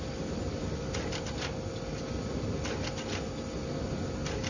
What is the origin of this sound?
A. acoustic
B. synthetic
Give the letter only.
A